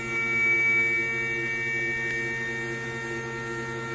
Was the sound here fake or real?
real